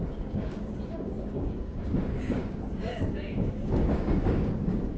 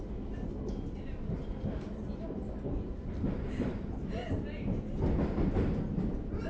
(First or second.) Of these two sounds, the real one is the second